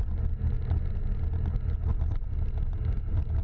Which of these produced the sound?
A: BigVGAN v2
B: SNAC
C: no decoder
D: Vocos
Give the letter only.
C